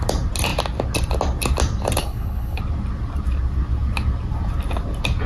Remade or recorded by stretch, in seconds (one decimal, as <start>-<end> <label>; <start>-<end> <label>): 0.0-2.0 recorded; 2.0-2.6 remade; 2.6-5.3 recorded